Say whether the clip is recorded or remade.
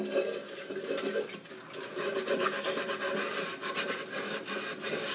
recorded